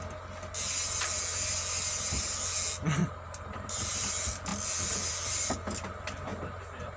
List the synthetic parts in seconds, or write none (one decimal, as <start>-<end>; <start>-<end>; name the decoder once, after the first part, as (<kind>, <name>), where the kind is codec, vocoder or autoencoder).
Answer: 3.0-4.1 (vocoder, BigVGAN v2); 6.3-7.0